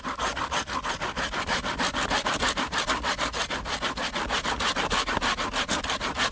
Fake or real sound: real